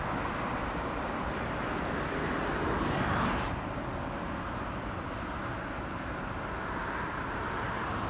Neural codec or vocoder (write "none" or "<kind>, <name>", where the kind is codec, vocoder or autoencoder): none